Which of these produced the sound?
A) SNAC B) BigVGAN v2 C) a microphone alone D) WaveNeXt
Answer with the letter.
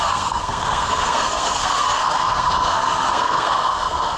A